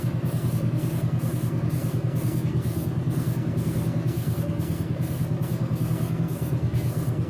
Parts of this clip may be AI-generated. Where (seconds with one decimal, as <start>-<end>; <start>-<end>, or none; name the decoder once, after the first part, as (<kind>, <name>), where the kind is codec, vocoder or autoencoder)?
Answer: 0.0-7.3 (codec, SNAC)